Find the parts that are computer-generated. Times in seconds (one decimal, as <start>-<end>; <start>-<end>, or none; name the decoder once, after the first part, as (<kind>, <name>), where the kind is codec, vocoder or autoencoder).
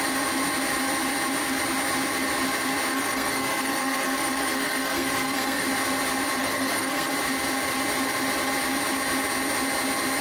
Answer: 2.9-5.6 (codec, SNAC); 6.4-7.1